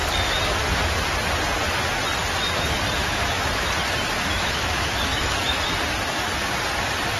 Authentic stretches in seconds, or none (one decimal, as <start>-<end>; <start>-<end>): 0.0-3.0; 3.5-4.3; 5.6-7.2